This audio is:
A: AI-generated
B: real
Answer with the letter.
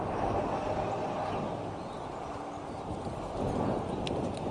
B